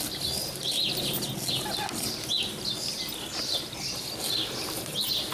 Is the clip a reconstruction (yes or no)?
no